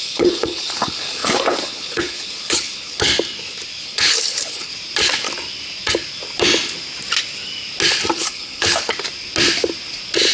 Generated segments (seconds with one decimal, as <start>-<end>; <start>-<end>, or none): 0.0-3.1; 3.8-4.7; 8.1-8.9